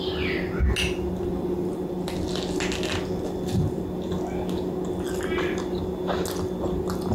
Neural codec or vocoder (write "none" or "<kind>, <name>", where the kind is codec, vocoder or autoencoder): none